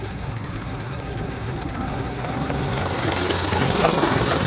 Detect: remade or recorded remade